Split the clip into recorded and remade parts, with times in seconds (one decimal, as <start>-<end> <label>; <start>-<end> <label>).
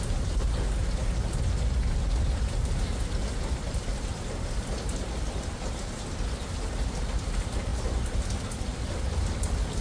0.0-9.8 recorded